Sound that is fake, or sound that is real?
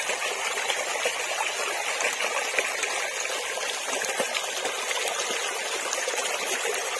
real